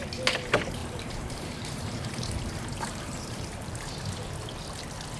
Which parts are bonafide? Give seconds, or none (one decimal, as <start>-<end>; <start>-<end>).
0.0-0.8; 3.9-5.2